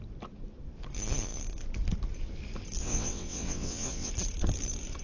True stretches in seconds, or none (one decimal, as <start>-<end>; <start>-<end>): 0.0-2.8; 4.1-5.0